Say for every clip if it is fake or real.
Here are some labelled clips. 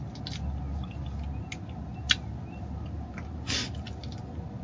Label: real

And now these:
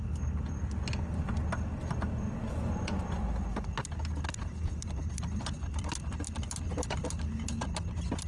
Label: real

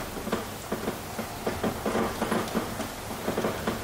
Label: real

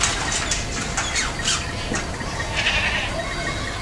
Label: real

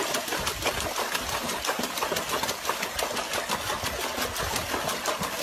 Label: real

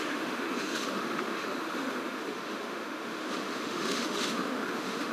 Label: fake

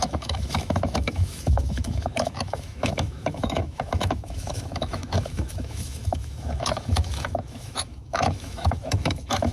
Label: fake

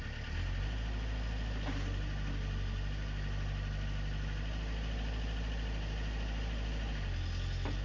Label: real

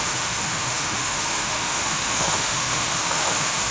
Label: fake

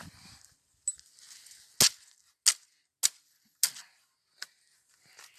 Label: real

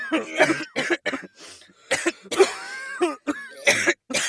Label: real